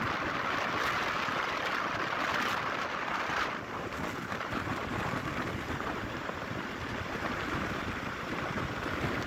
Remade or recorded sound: remade